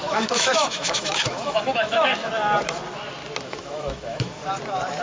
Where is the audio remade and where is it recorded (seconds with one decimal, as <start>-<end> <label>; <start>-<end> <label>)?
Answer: 0.0-2.4 remade; 2.4-3.4 recorded; 3.4-4.4 remade; 4.4-5.0 recorded

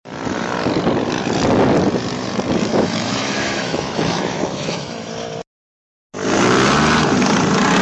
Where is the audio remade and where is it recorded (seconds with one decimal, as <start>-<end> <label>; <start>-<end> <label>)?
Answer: 0.0-2.7 recorded; 2.7-5.1 remade; 5.1-7.8 recorded

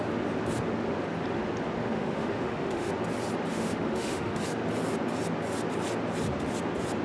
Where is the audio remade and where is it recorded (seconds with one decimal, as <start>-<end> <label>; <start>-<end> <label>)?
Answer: 0.0-1.8 recorded; 1.8-2.9 remade; 2.9-3.5 recorded; 3.5-4.4 remade; 4.4-7.0 recorded

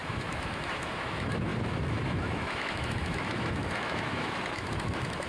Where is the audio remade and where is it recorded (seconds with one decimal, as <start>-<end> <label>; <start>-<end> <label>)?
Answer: 0.0-5.3 remade

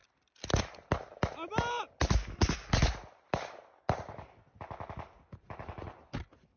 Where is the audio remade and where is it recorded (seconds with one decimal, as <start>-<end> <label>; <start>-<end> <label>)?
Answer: 0.0-6.6 recorded

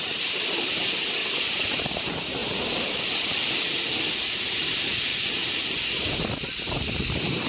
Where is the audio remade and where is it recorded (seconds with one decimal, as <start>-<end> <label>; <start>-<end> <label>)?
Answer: 0.0-1.2 remade; 1.2-1.9 recorded; 1.9-2.4 remade; 2.4-4.1 recorded; 4.1-5.1 remade; 5.1-6.8 recorded; 6.8-7.5 remade

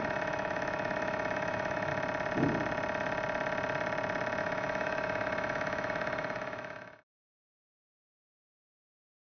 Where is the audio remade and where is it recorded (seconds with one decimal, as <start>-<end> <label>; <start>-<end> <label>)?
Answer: 0.0-1.9 remade; 1.9-4.4 recorded; 4.4-9.4 remade